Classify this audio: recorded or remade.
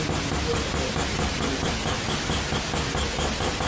recorded